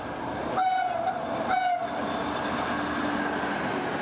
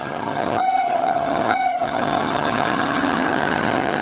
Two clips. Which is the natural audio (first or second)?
first